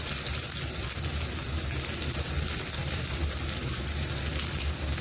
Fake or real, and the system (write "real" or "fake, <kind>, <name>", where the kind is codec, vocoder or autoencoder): real